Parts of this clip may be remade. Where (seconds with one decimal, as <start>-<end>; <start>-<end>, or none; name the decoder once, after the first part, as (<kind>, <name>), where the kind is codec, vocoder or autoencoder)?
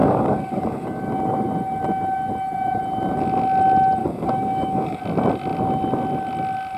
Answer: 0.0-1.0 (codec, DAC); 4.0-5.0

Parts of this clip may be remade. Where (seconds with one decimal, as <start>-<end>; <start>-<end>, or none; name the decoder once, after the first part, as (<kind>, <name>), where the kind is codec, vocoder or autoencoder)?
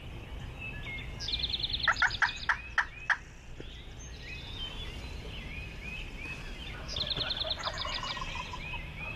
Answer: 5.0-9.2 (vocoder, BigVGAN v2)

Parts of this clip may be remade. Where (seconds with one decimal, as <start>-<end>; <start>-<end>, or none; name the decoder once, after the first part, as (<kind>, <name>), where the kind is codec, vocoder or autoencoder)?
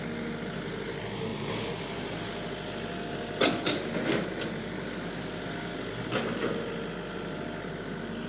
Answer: none